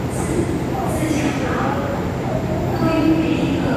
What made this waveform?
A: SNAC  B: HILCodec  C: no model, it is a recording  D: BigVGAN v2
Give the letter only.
C